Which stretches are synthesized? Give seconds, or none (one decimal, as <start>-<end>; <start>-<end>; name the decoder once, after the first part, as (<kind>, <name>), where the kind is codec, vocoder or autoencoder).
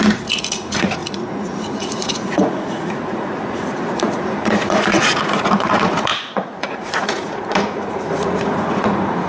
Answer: 0.0-9.3 (vocoder, Vocos)